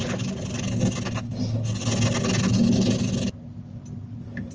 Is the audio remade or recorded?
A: recorded